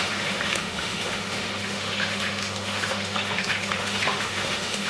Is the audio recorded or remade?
remade